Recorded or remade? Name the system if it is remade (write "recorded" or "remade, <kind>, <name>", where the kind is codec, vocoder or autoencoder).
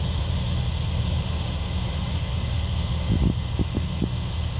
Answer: recorded